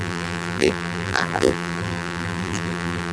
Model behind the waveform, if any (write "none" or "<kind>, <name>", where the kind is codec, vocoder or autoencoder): vocoder, BigVGAN v2